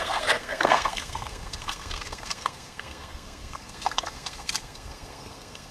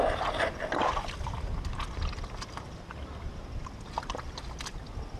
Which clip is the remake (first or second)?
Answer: first